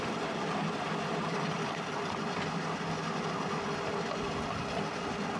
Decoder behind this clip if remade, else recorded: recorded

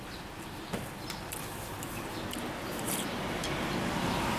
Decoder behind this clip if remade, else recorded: recorded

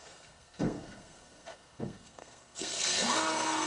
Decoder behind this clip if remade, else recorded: remade, codec, SNAC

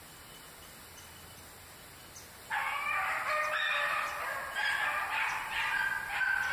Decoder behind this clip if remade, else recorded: recorded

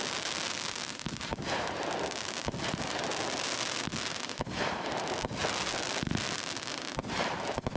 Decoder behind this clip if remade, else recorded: recorded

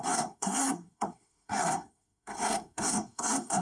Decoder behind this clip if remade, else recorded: remade, codec, SNAC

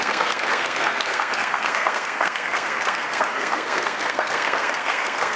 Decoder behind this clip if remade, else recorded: remade, codec, SNAC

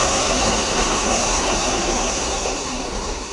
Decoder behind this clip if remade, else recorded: remade, codec, SNAC